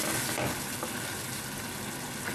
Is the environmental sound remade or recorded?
recorded